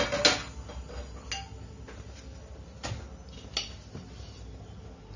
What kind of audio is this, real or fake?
real